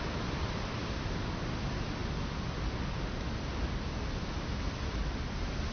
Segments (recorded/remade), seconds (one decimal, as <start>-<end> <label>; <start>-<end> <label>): 0.0-5.7 recorded